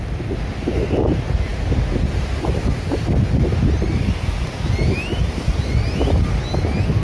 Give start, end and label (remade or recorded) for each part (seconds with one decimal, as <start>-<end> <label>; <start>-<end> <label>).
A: 0.0-5.1 recorded; 5.1-5.7 remade; 5.7-7.0 recorded